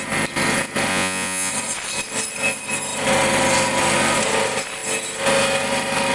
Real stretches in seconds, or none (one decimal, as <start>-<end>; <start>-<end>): 0.0-0.9; 1.5-6.1

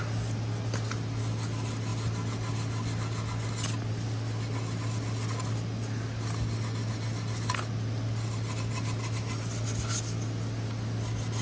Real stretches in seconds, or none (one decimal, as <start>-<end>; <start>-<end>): 0.0-11.4